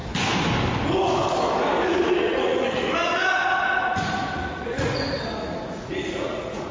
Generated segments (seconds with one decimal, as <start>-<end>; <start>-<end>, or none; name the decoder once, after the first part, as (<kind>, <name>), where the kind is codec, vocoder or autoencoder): 1.9-6.7 (vocoder, Vocos)